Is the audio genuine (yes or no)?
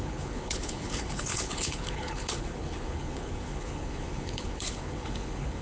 no